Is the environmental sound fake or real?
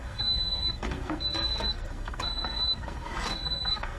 fake